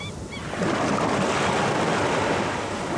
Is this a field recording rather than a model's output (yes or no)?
yes